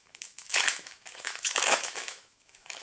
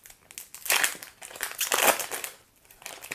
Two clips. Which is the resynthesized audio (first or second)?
first